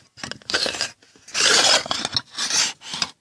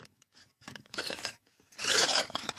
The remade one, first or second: second